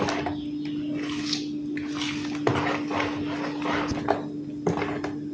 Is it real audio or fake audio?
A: real